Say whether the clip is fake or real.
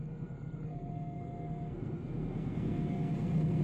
fake